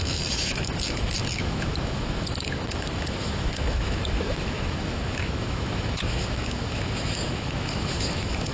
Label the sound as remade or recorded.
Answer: remade